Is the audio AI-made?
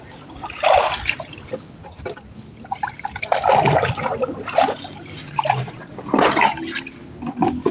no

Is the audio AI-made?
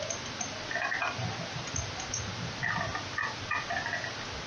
no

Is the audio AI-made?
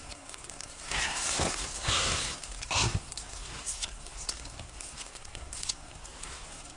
yes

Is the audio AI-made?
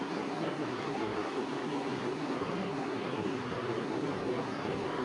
yes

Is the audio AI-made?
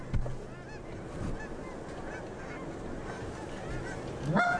no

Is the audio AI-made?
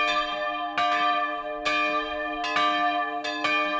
no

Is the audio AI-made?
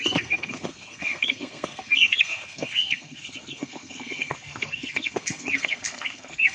yes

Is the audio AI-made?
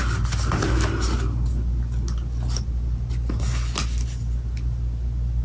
no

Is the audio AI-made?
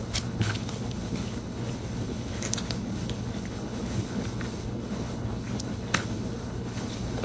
yes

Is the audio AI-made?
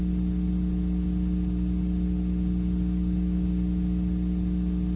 no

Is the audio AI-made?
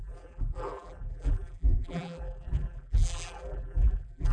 yes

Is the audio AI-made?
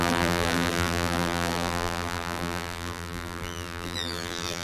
yes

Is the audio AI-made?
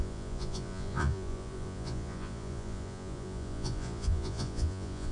yes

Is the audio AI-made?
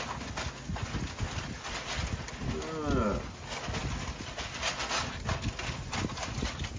no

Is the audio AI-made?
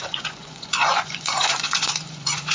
yes